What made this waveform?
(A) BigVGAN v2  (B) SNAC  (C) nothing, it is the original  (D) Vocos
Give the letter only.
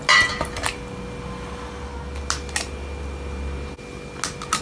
C